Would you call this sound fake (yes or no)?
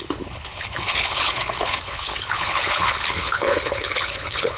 yes